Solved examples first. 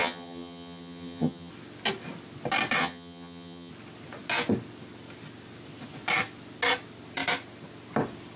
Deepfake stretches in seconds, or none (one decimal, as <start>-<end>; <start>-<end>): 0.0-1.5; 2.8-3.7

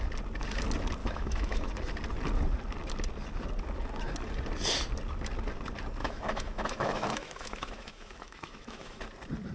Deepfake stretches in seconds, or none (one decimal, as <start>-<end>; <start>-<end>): 1.0-1.7; 6.0-9.0

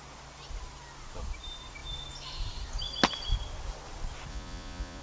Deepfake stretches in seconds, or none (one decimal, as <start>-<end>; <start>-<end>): 4.3-5.0

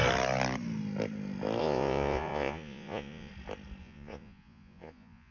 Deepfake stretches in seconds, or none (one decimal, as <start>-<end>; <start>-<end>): 1.6-3.3; 3.8-5.3